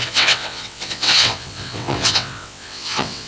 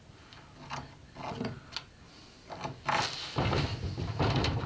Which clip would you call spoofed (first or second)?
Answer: first